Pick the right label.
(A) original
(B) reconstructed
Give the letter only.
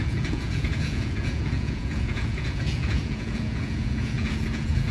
B